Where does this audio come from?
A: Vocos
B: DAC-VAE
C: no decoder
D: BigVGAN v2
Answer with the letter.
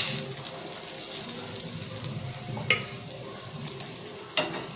C